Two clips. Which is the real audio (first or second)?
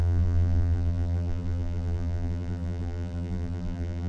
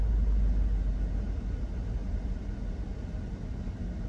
second